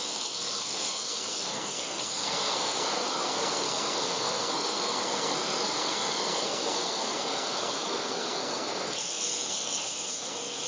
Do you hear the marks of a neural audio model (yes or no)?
yes